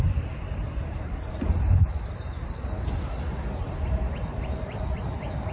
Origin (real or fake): fake